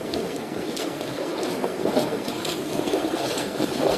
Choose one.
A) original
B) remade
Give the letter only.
B